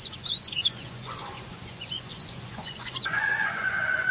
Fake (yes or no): yes